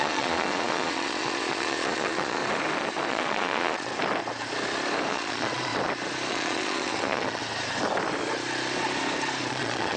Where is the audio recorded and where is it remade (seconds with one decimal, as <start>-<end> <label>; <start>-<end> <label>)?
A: 0.0-2.4 remade; 2.4-3.1 recorded; 3.1-3.9 remade; 3.9-5.1 recorded; 5.1-5.7 remade; 5.7-6.3 recorded; 6.3-7.4 remade; 7.4-9.5 recorded; 9.5-10.0 remade